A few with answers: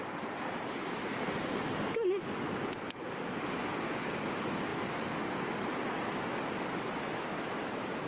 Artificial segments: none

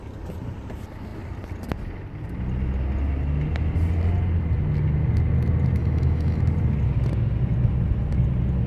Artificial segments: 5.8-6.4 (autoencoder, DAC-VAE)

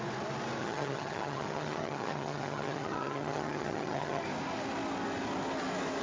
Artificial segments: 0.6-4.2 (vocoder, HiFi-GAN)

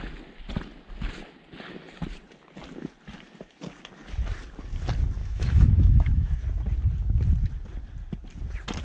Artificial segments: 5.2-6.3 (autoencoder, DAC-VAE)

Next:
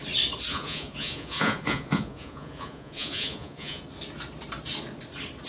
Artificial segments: 0.5-3.8 (vocoder, Vocos)